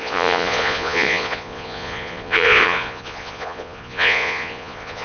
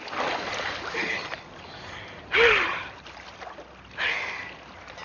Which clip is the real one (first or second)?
second